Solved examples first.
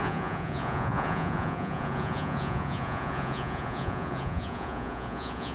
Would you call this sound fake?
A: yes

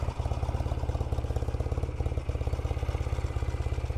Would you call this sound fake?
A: no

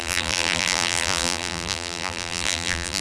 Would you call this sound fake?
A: yes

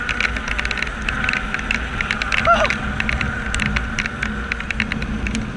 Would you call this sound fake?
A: no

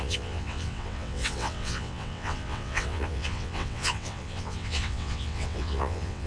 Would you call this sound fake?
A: yes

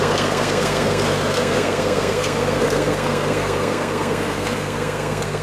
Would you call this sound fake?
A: yes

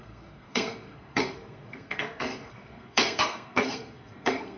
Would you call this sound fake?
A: yes